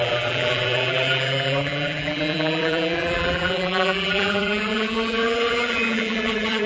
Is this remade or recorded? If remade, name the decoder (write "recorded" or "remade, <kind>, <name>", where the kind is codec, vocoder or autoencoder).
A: remade, vocoder, BigVGAN v2